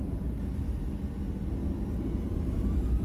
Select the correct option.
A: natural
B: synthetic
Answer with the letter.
A